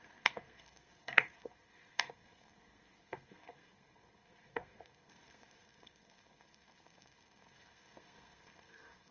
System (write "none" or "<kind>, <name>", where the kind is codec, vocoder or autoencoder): codec, SNAC